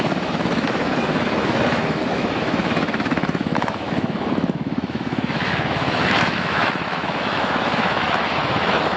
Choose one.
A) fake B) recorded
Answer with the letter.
A